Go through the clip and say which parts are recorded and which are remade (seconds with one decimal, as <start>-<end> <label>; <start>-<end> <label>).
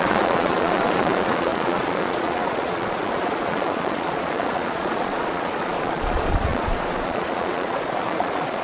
0.0-8.6 remade